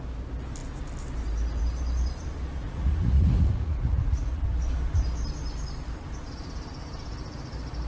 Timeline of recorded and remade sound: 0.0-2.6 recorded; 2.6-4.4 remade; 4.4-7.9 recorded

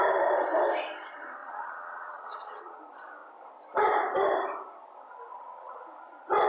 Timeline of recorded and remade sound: 0.0-1.4 recorded; 1.4-2.8 remade; 2.8-5.3 recorded; 5.3-5.8 remade; 5.8-6.5 recorded

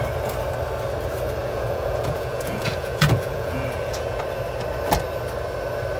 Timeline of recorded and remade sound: 0.0-1.4 recorded; 1.4-4.2 remade; 4.2-6.0 recorded

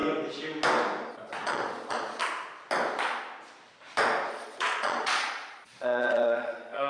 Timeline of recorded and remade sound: 0.0-1.1 recorded; 1.1-2.2 remade; 2.2-4.3 recorded; 4.3-6.9 remade

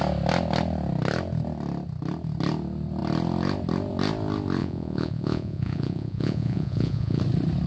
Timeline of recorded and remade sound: 0.0-4.6 recorded; 4.6-7.2 remade; 7.2-7.7 recorded

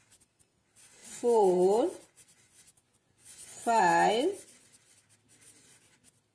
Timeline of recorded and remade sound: 0.0-1.0 recorded; 1.0-3.8 remade; 3.8-6.3 recorded

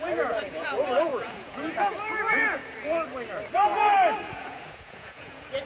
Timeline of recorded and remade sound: 0.0-2.6 remade; 2.6-4.3 recorded; 4.3-5.6 remade

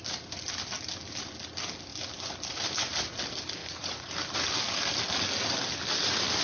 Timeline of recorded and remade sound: 0.0-3.6 recorded; 3.6-4.1 remade; 4.1-6.4 recorded